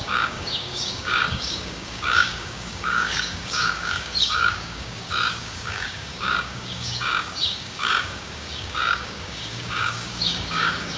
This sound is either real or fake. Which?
fake